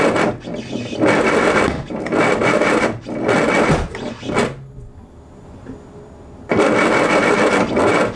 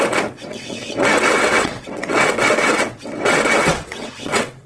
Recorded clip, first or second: first